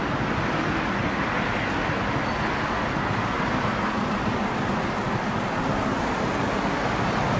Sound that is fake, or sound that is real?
real